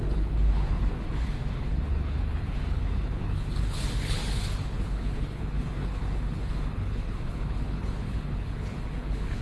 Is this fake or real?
fake